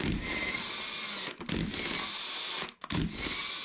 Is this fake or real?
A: real